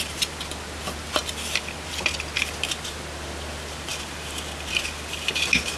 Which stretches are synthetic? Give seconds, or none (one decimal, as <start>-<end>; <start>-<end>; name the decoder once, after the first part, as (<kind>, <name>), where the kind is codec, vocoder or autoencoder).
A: none